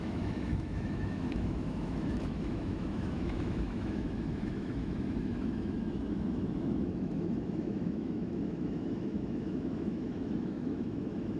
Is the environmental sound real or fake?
fake